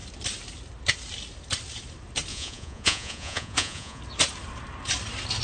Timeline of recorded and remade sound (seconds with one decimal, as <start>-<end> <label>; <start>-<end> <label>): 0.0-2.3 recorded; 2.3-4.0 remade; 4.0-5.4 recorded